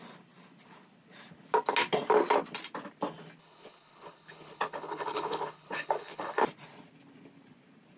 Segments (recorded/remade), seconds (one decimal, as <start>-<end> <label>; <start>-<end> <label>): 0.0-3.4 recorded; 3.4-6.4 remade; 6.4-8.0 recorded